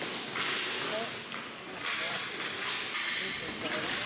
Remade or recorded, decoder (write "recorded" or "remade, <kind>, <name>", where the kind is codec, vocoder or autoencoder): recorded